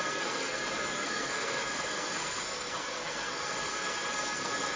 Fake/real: fake